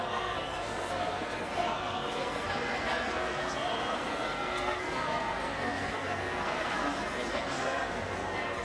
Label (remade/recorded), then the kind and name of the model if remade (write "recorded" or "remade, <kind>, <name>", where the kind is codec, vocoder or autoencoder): remade, codec, SNAC